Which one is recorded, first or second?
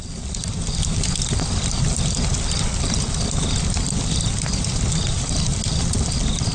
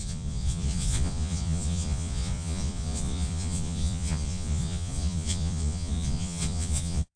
first